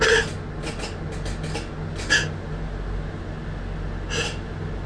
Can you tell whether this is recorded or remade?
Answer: recorded